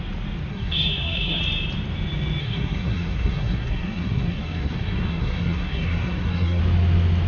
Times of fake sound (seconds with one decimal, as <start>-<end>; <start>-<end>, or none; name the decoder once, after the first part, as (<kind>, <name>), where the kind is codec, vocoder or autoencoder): 0.5-1.4 (codec, SNAC); 2.4-6.6